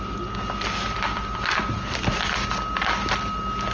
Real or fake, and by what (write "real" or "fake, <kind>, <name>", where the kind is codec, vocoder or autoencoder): real